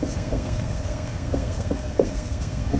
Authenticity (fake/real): fake